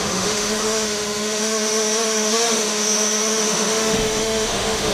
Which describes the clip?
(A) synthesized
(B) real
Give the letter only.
A